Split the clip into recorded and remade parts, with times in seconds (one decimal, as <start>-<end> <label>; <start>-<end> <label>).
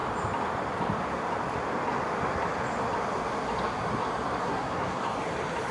0.0-4.4 recorded; 4.4-5.0 remade; 5.0-5.7 recorded